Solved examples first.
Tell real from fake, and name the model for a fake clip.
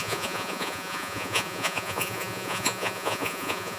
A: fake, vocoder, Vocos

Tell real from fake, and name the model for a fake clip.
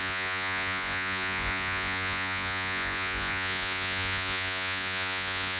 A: fake, vocoder, Vocos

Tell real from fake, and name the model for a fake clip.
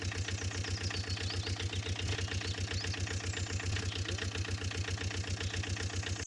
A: real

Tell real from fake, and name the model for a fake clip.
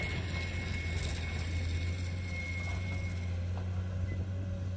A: real